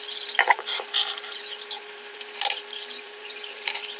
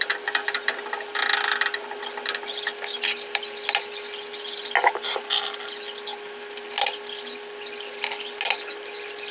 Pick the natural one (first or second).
second